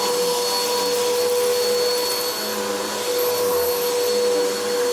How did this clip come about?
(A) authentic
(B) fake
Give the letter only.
A